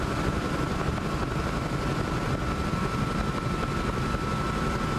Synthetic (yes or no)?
no